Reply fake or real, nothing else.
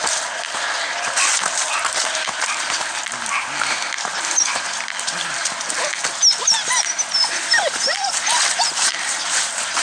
real